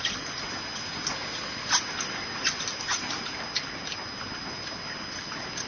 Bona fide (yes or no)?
yes